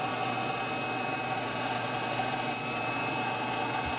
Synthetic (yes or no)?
no